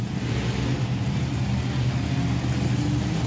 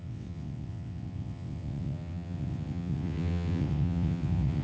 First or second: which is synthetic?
second